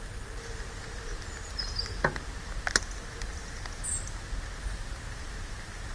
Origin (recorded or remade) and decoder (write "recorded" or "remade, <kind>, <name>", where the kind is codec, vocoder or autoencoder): recorded